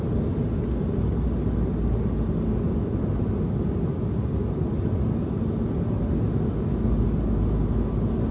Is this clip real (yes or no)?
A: yes